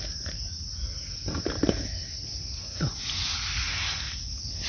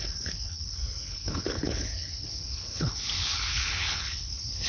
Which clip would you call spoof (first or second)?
second